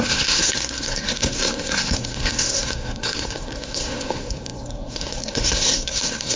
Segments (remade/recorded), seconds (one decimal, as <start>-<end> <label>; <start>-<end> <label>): 0.0-6.4 remade